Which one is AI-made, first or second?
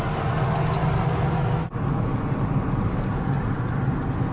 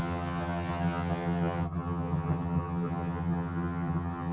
second